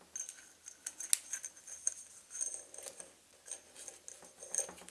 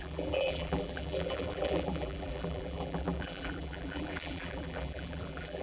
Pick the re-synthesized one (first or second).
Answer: second